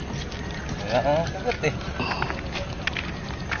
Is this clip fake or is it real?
real